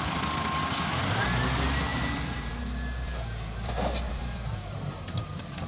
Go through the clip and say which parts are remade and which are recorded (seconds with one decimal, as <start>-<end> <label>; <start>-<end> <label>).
0.0-1.9 recorded; 1.9-2.6 remade; 2.6-4.2 recorded; 4.2-5.3 remade; 5.3-5.7 recorded